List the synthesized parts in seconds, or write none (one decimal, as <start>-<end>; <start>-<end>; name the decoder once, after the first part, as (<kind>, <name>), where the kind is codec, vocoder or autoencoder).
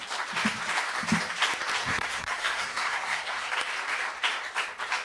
1.8-3.5 (codec, SNAC)